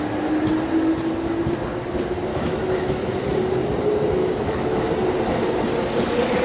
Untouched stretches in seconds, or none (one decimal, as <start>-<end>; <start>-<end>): 0.0-2.3; 3.1-4.2; 4.9-6.4